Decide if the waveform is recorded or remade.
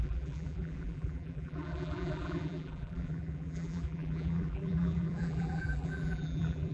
remade